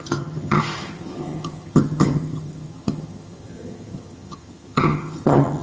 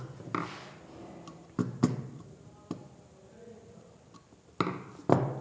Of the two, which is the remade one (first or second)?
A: first